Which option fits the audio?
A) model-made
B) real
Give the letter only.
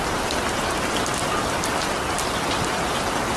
B